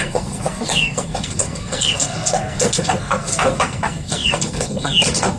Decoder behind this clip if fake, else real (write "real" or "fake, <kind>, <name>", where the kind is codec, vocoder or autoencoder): fake, codec, SNAC